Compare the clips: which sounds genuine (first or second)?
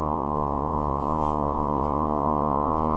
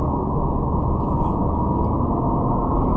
second